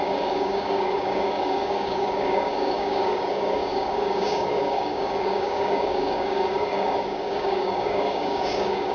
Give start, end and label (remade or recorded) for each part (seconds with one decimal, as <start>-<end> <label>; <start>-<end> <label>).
0.0-8.9 remade